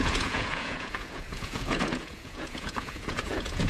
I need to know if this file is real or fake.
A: fake